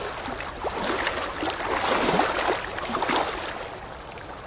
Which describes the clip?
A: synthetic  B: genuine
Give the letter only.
B